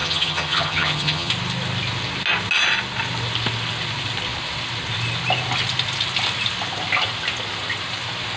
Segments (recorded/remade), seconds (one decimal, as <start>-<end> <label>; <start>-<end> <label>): 0.0-1.3 remade; 1.3-8.4 recorded